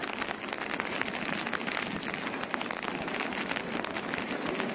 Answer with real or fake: real